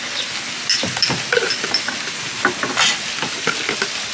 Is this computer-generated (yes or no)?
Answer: no